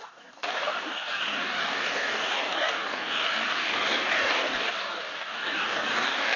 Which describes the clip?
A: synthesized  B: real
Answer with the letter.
A